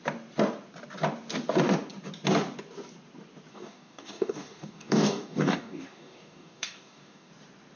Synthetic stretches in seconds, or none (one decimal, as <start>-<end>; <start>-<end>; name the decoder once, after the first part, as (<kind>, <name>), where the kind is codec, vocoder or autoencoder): 3.5-7.3 (codec, DAC)

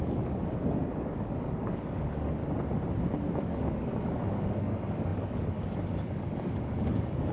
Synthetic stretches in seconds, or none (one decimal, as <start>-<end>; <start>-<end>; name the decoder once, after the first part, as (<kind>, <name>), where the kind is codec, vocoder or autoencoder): 0.0-2.4 (codec, DAC); 3.4-7.3

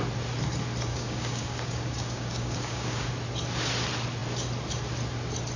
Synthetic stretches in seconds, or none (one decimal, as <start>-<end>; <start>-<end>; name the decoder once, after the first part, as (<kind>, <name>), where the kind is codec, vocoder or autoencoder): 0.9-3.1 (codec, DAC)

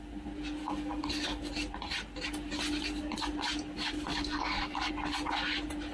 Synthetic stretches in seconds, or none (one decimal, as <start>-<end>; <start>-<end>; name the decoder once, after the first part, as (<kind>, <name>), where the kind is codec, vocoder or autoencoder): 0.6-1.5 (codec, DAC); 4.1-4.9

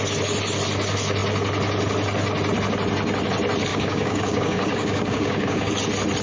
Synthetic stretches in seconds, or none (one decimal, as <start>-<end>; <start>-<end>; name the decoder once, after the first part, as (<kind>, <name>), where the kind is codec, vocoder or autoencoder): 3.7-5.7 (codec, DAC)

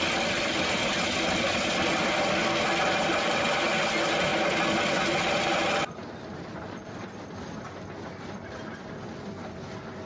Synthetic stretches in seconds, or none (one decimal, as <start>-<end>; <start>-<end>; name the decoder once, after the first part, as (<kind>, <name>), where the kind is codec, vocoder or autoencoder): none